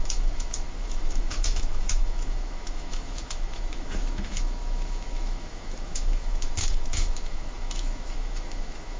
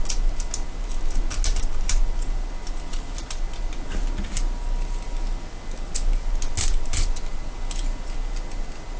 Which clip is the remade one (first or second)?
first